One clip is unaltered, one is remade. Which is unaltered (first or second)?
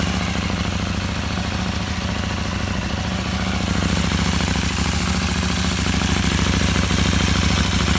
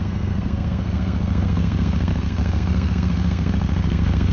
first